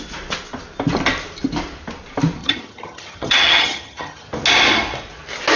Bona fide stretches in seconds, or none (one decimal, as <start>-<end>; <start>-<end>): 0.0-2.4; 4.3-5.6